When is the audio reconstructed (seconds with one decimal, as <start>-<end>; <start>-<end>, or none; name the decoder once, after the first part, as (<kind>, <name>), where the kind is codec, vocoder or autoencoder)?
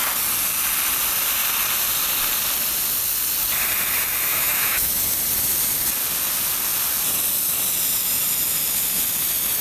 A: 4.3-4.9 (autoencoder, DAC-VAE)